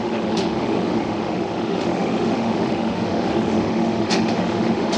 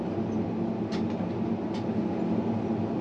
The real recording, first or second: second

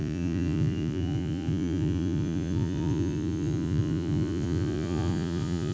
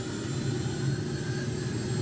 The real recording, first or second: second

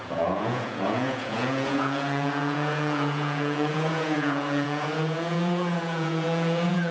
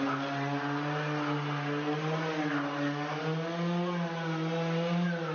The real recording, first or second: second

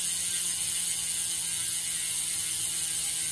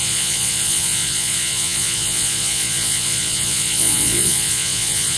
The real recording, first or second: first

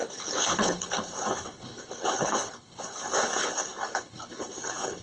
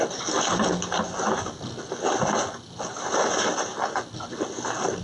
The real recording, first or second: second